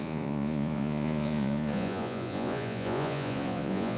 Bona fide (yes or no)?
no